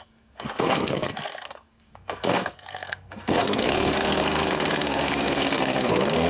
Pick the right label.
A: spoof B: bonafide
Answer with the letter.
A